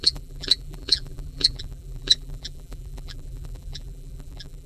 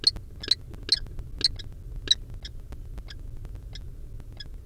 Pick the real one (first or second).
second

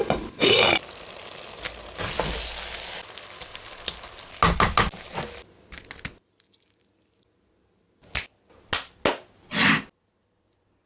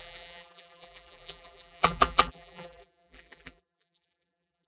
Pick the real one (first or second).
first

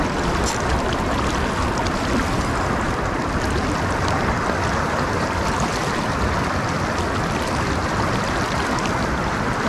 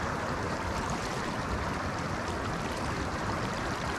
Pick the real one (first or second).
first